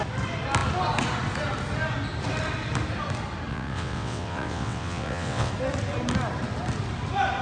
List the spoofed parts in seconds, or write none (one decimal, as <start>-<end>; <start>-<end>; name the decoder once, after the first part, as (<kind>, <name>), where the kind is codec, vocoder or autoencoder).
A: 3.5-5.5 (vocoder, WaveNeXt)